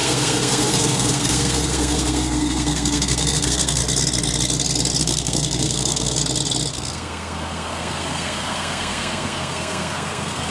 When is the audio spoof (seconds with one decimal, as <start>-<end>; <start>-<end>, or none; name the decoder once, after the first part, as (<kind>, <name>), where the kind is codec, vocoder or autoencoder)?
0.0-3.8 (codec, SNAC); 5.0-6.2; 6.7-10.5